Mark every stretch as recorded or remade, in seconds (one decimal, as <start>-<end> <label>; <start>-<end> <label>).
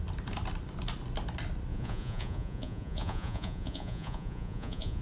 0.0-1.7 recorded; 1.7-5.0 remade